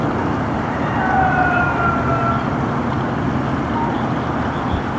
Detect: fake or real real